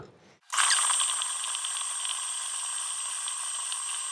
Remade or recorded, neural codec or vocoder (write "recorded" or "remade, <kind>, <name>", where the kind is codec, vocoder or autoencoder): recorded